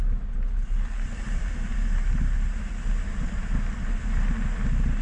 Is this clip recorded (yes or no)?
yes